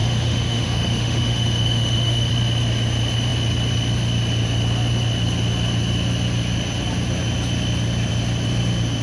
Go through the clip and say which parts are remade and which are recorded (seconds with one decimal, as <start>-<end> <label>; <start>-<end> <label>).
0.0-2.3 remade; 2.3-9.0 recorded